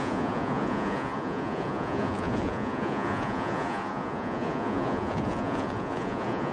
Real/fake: fake